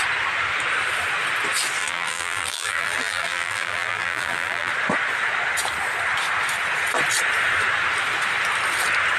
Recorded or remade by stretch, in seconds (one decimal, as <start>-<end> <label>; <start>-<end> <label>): 0.0-1.8 recorded; 1.8-4.7 remade; 4.7-9.2 recorded